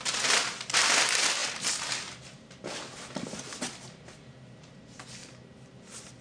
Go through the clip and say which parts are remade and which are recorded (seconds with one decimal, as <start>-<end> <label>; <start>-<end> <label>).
0.0-6.2 recorded